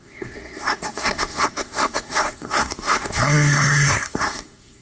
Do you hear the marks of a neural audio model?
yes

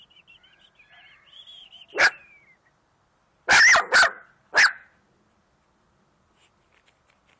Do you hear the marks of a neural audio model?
no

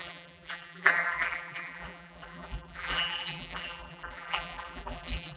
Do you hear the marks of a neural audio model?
yes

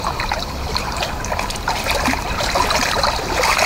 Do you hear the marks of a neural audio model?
no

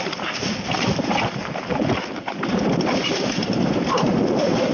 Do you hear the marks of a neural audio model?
no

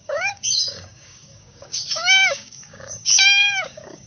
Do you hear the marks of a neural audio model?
yes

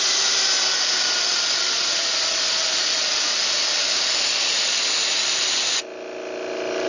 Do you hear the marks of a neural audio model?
no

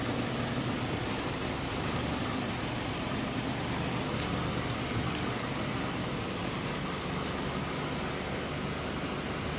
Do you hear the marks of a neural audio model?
no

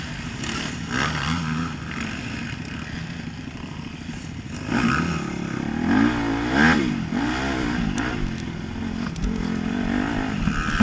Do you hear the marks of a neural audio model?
no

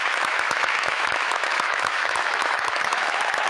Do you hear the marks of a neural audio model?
yes